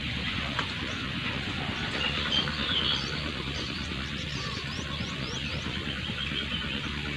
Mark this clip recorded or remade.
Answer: remade